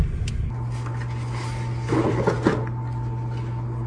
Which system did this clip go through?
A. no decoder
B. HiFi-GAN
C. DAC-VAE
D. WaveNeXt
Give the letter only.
A